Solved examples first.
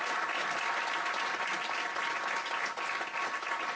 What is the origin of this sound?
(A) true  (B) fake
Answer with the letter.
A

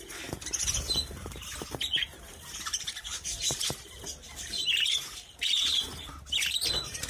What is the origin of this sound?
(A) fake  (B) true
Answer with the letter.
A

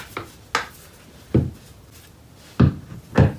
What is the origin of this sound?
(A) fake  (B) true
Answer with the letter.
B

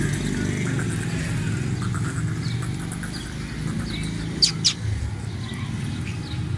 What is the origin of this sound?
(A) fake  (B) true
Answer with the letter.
B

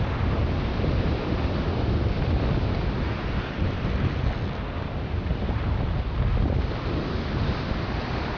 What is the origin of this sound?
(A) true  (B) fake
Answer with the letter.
A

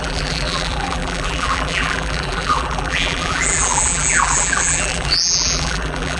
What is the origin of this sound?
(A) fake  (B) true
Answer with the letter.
A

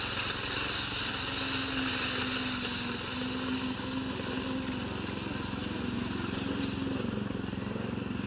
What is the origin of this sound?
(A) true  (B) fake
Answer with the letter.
A